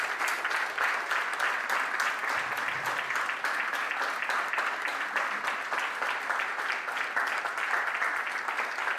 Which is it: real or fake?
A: real